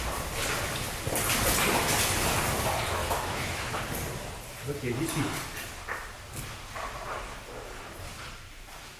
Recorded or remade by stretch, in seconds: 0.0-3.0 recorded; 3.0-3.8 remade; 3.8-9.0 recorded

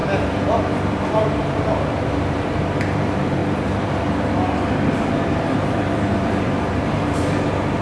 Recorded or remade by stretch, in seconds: 0.0-1.4 recorded; 1.4-3.4 remade; 3.4-4.7 recorded; 4.7-7.8 remade

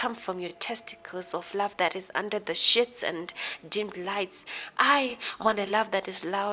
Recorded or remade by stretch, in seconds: 0.0-5.1 recorded; 5.1-5.7 remade; 5.7-6.5 recorded

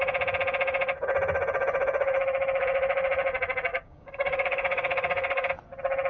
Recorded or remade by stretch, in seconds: 0.0-3.7 recorded; 3.7-5.5 remade; 5.5-6.1 recorded

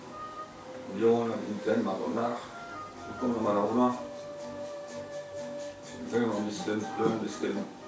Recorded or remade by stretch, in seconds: 0.0-2.6 remade; 2.6-3.4 recorded; 3.4-7.9 remade